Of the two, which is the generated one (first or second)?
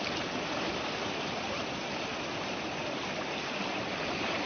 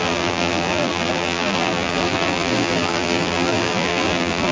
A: second